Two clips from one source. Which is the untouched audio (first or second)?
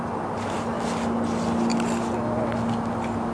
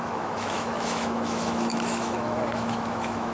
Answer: first